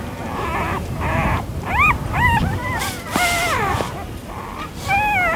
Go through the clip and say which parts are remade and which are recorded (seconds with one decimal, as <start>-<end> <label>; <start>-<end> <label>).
0.0-0.5 recorded; 0.5-3.7 remade; 3.7-4.2 recorded; 4.2-4.7 remade; 4.7-5.4 recorded